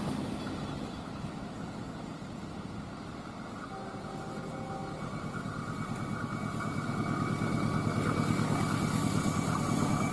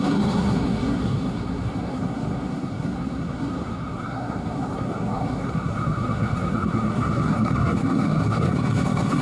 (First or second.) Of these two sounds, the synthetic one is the second